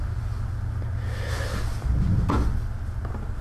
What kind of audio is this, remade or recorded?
recorded